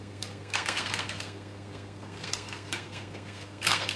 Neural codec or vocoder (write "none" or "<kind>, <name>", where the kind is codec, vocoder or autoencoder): codec, SNAC